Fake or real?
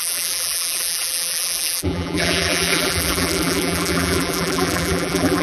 fake